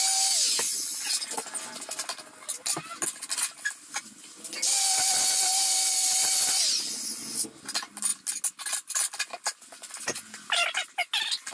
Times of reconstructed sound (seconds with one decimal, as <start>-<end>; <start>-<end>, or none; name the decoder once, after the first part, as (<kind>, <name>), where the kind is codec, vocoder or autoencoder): none